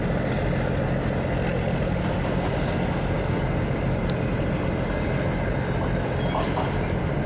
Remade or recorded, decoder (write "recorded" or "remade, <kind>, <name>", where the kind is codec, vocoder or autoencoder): recorded